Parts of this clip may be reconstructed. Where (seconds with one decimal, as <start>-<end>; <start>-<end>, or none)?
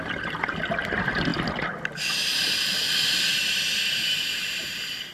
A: none